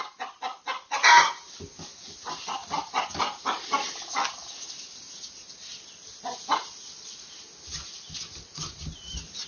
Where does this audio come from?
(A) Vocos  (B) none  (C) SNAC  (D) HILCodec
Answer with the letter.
B